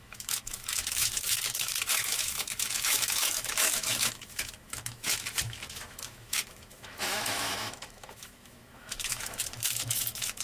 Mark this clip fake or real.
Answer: fake